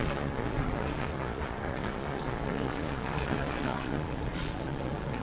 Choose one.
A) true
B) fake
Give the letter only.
B